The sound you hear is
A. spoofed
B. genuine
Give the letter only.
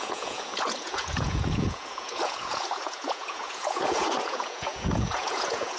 A